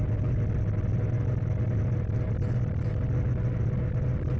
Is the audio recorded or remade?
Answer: recorded